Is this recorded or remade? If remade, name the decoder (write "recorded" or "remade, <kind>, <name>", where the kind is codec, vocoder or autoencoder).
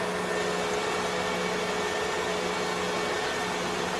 recorded